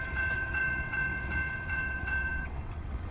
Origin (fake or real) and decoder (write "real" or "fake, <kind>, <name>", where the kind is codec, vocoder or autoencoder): fake, vocoder, WaveNeXt